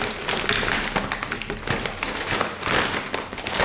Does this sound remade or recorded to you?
recorded